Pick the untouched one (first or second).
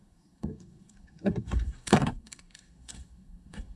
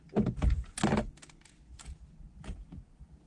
second